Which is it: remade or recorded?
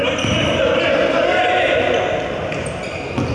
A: recorded